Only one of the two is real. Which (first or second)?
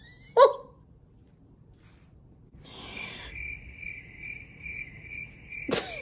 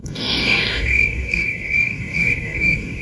first